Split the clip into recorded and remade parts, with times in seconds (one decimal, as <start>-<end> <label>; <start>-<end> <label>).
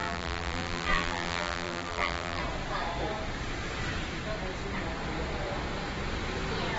0.0-2.4 remade; 2.4-6.8 recorded